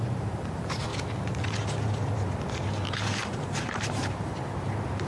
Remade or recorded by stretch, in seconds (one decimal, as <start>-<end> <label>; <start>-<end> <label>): 0.0-0.9 remade; 0.9-2.9 recorded; 2.9-4.3 remade; 4.3-5.1 recorded